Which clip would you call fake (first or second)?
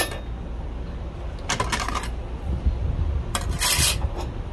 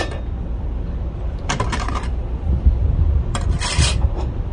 second